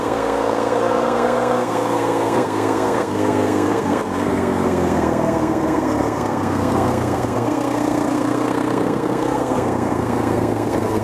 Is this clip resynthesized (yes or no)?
yes